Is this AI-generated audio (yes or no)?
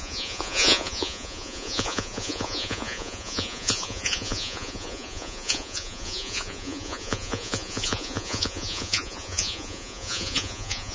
yes